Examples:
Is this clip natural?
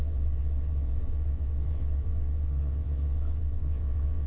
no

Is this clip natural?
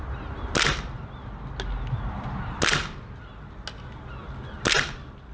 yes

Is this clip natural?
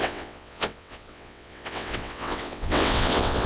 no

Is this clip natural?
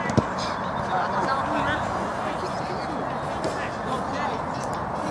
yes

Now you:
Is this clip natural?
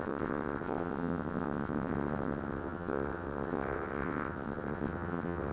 no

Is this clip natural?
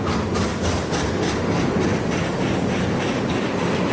yes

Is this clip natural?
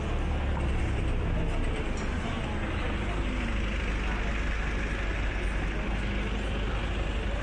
yes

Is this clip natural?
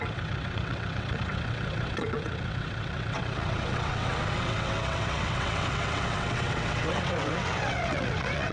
no